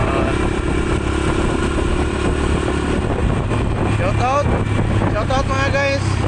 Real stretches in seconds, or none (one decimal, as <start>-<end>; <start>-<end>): 0.0-6.3